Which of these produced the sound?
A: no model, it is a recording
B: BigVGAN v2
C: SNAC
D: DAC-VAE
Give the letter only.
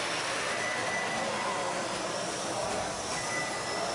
A